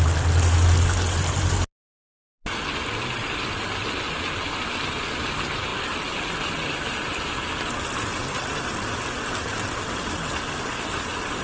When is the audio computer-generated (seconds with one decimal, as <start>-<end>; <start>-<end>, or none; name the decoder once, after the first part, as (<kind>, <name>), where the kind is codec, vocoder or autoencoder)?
none